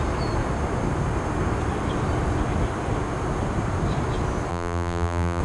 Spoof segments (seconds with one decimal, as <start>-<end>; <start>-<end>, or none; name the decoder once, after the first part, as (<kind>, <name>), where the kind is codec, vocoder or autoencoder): 4.5-5.4 (vocoder, BigVGAN v2)